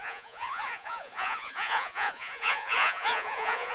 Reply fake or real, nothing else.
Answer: fake